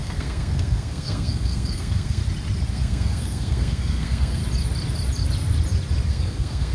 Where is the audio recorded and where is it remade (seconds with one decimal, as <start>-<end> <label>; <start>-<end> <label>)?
0.0-2.2 remade; 2.2-2.7 recorded; 2.7-4.4 remade; 4.4-6.1 recorded; 6.1-6.7 remade